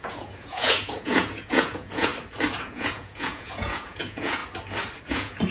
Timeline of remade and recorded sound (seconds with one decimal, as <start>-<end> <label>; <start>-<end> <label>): 0.0-2.1 remade; 2.1-2.6 recorded; 2.6-4.4 remade; 4.4-5.0 recorded; 5.0-5.5 remade